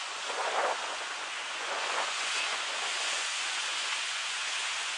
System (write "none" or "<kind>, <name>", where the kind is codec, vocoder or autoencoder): vocoder, Vocos